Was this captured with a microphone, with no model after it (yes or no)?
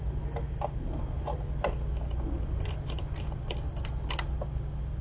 yes